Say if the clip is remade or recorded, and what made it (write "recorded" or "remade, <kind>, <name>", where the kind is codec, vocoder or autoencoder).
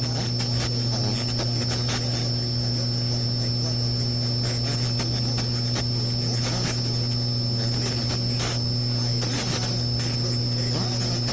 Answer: recorded